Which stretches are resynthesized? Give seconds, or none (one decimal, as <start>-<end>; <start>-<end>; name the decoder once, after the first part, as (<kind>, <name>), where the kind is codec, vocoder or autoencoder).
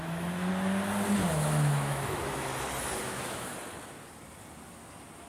0.0-0.5 (autoencoder, DAC-VAE); 1.3-2.5; 3.0-3.5